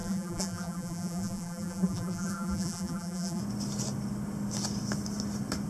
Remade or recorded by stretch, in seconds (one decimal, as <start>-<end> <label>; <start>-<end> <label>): 0.0-3.4 remade; 3.4-5.7 recorded